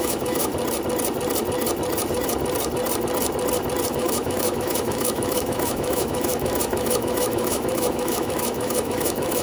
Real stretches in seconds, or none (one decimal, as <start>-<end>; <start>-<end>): 0.5-3.9

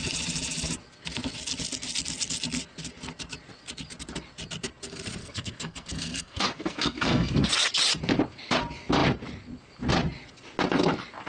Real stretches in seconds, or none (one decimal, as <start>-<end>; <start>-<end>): 0.0-5.2; 7.5-11.3

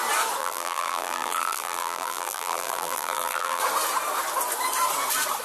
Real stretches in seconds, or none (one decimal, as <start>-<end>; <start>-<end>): 0.0-0.4; 3.6-5.4

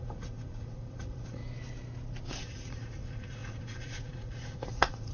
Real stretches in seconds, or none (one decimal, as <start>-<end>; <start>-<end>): 1.4-2.4

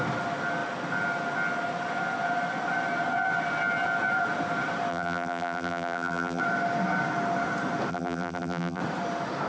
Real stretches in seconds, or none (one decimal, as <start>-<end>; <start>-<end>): 0.0-4.9; 6.4-7.9; 8.8-9.5